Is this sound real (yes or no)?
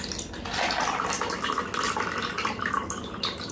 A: yes